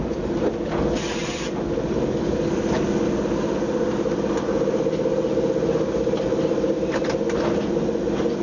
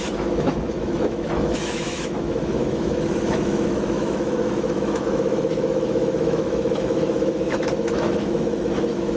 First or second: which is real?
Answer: first